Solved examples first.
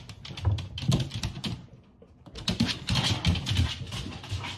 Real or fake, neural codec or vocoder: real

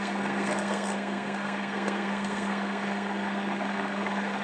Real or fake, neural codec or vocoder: fake, codec, SNAC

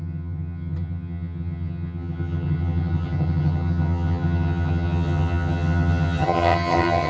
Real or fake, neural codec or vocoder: fake, vocoder, HiFi-GAN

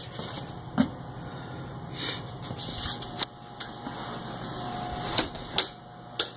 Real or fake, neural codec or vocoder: real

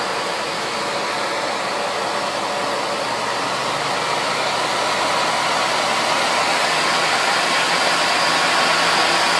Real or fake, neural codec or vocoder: real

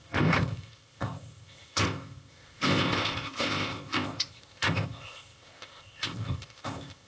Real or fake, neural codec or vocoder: fake, codec, ZipCodec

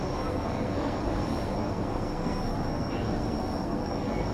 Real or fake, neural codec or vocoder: fake, codec, SNAC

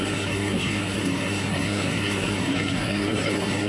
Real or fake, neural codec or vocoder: fake, codec, SNAC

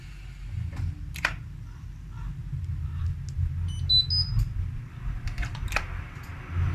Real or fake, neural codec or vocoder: real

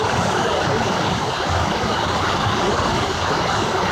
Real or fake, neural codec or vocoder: fake, codec, DAC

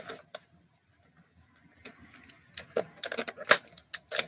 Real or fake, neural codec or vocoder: real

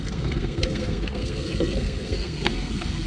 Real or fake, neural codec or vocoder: fake, codec, SNAC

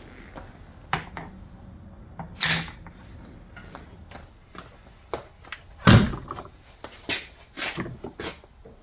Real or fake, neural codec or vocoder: real